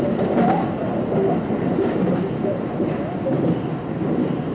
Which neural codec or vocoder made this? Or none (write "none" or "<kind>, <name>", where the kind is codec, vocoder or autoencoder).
none